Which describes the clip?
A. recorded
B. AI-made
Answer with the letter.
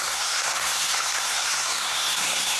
B